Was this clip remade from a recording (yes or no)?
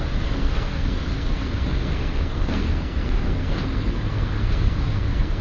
yes